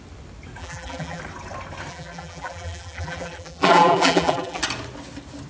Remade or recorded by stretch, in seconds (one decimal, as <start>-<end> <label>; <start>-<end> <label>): 0.0-0.6 recorded; 0.6-1.2 remade; 1.2-1.9 recorded; 1.9-4.6 remade; 4.6-5.5 recorded